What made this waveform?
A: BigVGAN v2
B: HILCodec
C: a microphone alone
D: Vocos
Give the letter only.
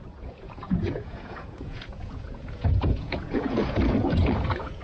D